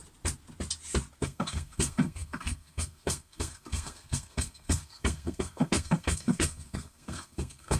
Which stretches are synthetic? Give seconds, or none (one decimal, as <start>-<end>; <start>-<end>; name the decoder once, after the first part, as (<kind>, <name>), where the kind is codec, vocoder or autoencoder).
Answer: 1.2-7.8 (codec, SNAC)